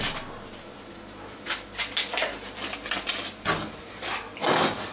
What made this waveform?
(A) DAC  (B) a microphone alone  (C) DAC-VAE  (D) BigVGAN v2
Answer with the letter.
B